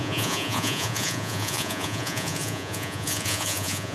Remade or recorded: remade